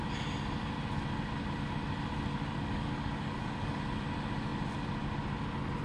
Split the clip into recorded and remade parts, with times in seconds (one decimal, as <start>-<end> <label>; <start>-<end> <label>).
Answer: 0.0-2.3 recorded; 2.3-3.8 remade; 3.8-5.8 recorded